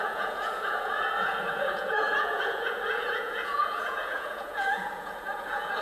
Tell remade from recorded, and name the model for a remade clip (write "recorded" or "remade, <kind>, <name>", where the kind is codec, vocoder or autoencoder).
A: remade, vocoder, Vocos